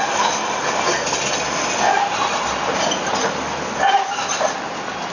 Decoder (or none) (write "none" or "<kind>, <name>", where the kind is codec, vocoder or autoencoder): none